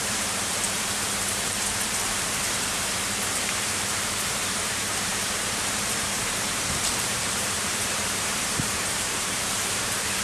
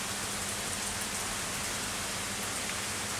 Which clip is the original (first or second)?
second